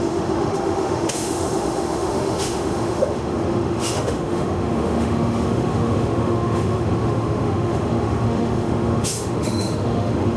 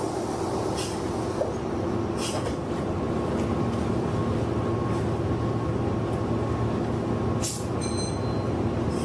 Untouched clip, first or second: second